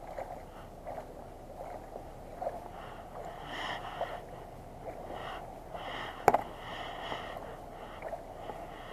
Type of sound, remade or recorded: recorded